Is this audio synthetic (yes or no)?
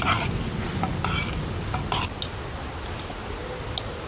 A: no